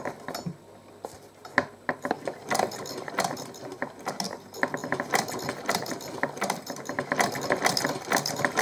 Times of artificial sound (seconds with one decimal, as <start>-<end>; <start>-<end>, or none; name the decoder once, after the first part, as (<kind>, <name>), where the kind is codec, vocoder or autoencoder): none

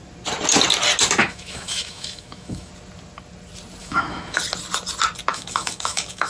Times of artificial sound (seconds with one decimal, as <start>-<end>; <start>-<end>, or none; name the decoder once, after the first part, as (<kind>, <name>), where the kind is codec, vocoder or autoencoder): 1.2-2.7 (autoencoder, DAC-VAE); 3.8-4.4; 5.3-6.3

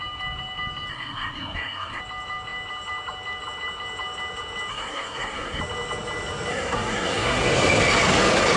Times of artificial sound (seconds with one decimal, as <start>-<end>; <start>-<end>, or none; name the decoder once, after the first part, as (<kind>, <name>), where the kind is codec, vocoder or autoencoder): 0.9-2.0 (codec, SNAC); 4.7-5.6; 6.5-7.4

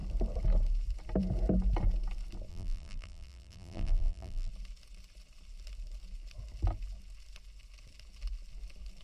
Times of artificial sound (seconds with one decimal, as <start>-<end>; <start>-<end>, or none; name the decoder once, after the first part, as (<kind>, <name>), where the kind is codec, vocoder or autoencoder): 2.5-4.5 (vocoder, BigVGAN v2)

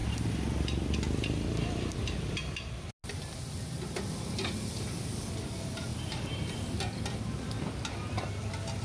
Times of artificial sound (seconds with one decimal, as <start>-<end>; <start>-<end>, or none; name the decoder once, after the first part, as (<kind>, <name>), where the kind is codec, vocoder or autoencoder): 0.0-2.9 (vocoder, BigVGAN v2); 5.9-7.6

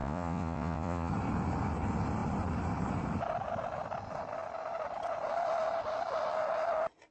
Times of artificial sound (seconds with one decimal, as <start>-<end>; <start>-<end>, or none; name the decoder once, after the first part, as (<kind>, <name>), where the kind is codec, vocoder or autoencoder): 0.0-1.1 (vocoder, Vocos)

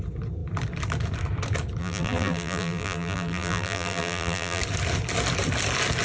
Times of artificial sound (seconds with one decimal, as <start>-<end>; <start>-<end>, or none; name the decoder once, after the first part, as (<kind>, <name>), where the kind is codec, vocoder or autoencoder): 1.8-4.6 (vocoder, BigVGAN v2)